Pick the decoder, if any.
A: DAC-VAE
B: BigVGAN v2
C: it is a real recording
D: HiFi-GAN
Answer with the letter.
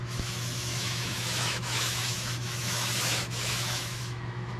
A